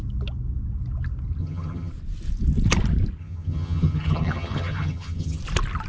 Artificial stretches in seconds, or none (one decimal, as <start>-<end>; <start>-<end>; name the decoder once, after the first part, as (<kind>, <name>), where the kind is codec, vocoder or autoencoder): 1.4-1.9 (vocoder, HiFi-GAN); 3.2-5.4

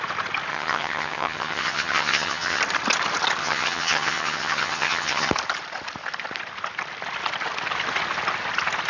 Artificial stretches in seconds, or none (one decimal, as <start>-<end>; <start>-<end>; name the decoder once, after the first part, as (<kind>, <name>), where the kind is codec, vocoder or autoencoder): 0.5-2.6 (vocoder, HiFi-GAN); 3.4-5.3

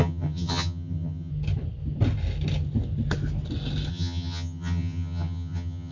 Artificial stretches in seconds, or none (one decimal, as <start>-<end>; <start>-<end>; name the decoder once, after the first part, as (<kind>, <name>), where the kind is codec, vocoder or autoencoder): 0.0-1.3 (vocoder, HiFi-GAN); 3.9-5.9